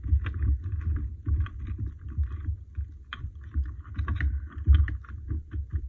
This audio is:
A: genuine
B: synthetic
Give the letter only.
A